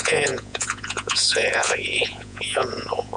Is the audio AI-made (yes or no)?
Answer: yes